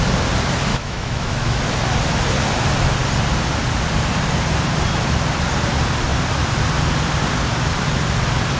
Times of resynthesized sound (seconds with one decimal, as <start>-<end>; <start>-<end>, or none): 0.7-1.6